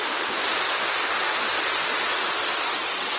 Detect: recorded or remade recorded